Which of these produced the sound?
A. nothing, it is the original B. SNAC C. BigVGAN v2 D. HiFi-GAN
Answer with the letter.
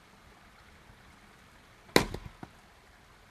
A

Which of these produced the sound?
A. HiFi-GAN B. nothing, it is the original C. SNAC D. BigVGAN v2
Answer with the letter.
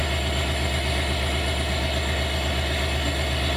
B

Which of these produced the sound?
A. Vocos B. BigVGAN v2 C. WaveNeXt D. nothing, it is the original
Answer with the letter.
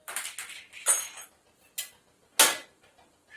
D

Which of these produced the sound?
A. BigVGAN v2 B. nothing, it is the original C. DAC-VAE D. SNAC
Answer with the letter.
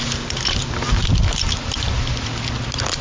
B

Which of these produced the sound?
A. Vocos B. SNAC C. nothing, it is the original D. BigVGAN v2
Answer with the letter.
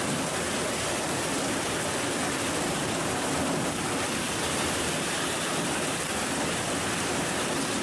D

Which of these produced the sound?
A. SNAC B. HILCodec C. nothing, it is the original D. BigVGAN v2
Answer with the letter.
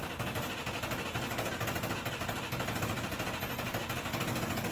C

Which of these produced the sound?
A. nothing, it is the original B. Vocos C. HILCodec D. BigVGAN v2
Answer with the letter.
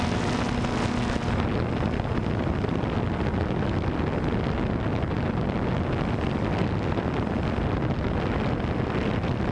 A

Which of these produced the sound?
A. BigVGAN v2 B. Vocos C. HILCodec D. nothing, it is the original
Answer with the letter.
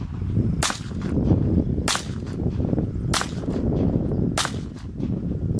D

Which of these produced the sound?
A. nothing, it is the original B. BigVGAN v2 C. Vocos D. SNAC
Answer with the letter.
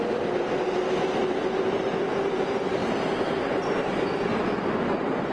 A